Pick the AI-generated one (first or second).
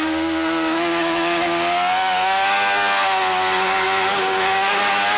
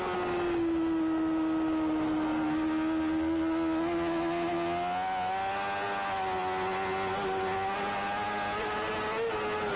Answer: first